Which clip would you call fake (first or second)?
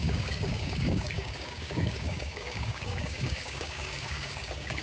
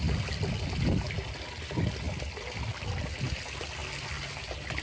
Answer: first